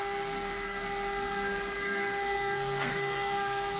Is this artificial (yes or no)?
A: yes